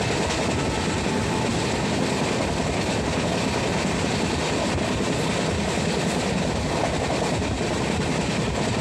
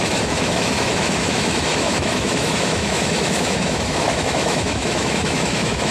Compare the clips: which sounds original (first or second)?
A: first